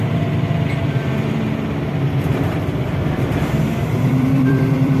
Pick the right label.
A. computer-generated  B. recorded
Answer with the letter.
A